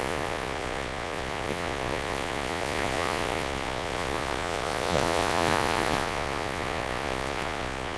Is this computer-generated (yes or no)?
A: yes